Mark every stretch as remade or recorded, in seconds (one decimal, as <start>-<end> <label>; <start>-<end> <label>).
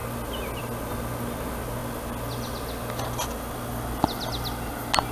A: 0.0-5.1 recorded